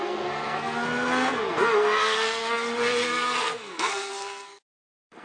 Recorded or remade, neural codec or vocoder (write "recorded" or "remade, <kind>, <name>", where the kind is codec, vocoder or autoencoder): remade, codec, SNAC